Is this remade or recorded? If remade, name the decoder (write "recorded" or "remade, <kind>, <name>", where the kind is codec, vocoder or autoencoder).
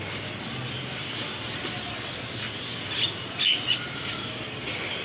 recorded